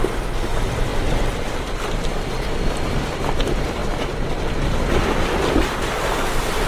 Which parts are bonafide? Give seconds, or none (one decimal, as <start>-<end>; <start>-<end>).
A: 0.0-0.9; 2.1-6.7